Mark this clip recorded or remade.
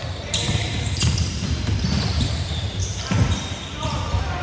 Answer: remade